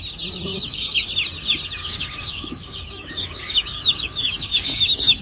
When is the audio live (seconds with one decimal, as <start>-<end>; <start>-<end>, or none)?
0.0-0.5; 1.1-1.8